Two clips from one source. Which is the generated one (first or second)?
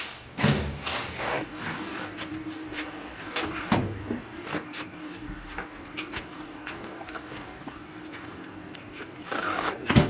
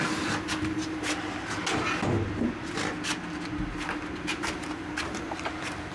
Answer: first